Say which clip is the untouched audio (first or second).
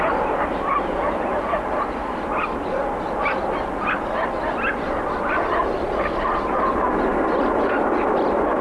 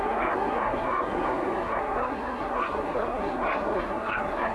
first